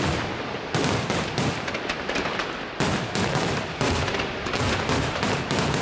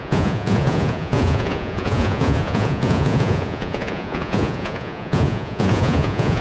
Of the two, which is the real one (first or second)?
first